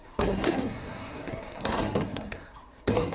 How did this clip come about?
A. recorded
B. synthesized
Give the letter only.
B